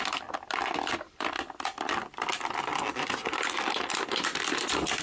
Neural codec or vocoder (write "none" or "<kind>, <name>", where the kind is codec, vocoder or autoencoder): none